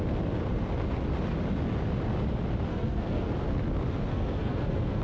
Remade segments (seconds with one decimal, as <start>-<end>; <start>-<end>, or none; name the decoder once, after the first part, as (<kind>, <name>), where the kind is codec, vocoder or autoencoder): 2.7-3.3 (codec, SNAC); 4.1-5.0